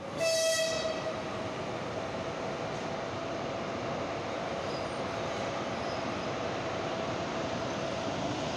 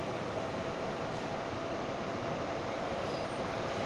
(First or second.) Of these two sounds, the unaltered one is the first